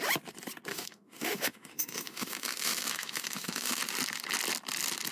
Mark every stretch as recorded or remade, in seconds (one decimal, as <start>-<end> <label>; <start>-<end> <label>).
0.0-0.7 recorded; 0.7-3.8 remade; 3.8-5.1 recorded